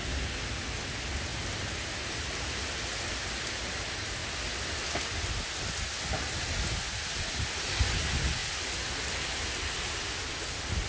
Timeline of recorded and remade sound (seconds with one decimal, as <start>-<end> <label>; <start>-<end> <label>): 0.0-1.3 recorded; 1.3-2.6 remade; 2.6-10.9 recorded